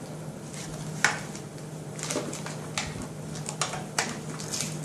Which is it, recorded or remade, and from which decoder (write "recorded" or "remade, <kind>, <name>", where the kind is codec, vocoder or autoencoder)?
recorded